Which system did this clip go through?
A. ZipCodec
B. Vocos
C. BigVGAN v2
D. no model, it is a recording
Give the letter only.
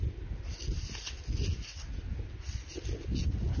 D